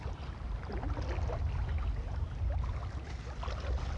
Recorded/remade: recorded